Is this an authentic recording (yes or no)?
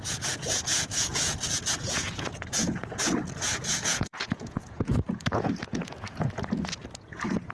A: no